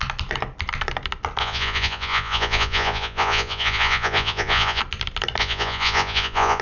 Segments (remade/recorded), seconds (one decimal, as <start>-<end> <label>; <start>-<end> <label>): 0.0-1.4 recorded; 1.4-4.8 remade; 4.8-5.4 recorded; 5.4-6.6 remade